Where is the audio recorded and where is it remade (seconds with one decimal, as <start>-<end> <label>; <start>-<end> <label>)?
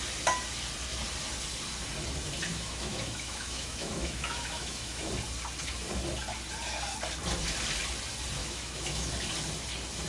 0.0-2.5 recorded; 2.5-5.1 remade; 5.1-8.4 recorded; 8.4-9.1 remade; 9.1-10.1 recorded